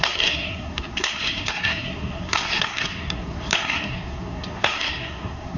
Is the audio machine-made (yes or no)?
yes